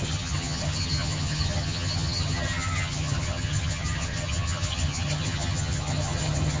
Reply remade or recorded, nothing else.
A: remade